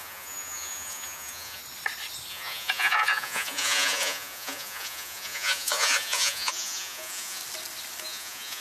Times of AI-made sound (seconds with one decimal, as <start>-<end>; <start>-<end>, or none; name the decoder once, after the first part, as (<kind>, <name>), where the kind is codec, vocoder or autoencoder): 0.0-1.6 (vocoder, Vocos); 2.3-7.4; 8.0-8.6